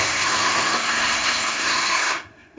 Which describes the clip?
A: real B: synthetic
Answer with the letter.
B